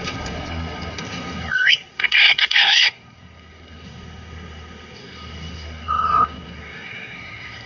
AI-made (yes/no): yes